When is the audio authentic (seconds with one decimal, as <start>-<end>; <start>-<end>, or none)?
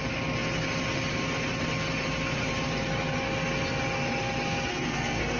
0.0-4.7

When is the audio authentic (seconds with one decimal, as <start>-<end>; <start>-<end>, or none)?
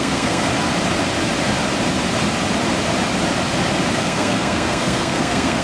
0.5-3.9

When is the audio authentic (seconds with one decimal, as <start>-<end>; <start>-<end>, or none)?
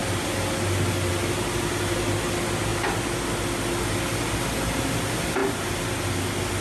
0.0-6.6